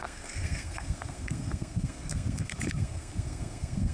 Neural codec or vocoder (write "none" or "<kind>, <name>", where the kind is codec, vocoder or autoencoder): codec, SNAC